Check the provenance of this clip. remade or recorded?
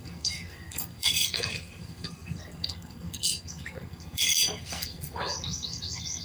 remade